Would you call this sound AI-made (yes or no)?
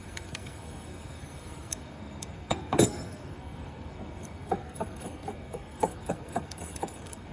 yes